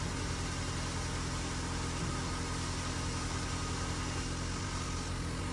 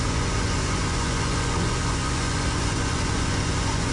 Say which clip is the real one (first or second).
first